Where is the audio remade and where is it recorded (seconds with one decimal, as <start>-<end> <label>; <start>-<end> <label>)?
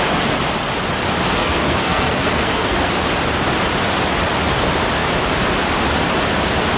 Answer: 0.0-1.4 recorded; 1.4-2.9 remade; 2.9-6.8 recorded